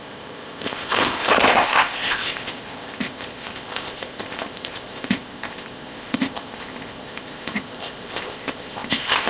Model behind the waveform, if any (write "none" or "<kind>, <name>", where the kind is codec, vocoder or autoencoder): codec, ZipCodec